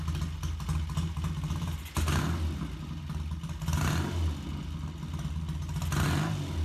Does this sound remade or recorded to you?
recorded